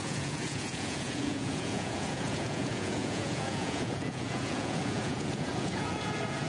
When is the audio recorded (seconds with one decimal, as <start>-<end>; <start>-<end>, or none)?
none